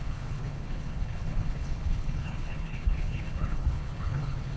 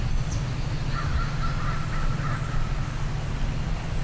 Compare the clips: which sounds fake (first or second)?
first